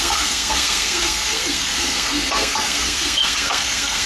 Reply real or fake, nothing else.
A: fake